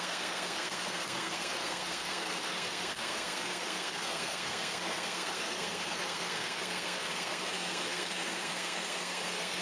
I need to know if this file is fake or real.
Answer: fake